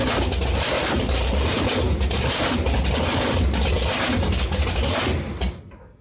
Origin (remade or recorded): recorded